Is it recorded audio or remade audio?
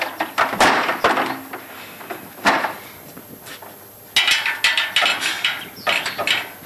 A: recorded